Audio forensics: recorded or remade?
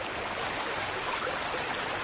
recorded